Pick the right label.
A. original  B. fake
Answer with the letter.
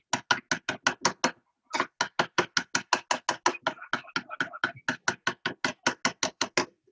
A